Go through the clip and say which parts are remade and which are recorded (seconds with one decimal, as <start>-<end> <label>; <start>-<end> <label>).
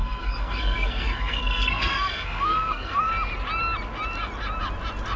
0.0-3.1 remade; 3.1-5.2 recorded